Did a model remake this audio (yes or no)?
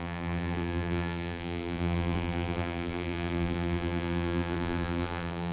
yes